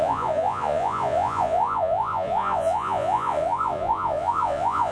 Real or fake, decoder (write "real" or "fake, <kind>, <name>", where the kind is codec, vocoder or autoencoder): fake, vocoder, Vocos